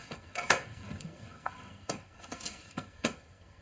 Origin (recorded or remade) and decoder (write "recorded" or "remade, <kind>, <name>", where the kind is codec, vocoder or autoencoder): remade, codec, SNAC